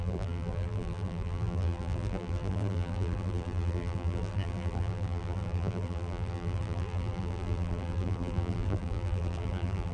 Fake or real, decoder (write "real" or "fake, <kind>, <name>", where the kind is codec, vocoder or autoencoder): fake, vocoder, BigVGAN v2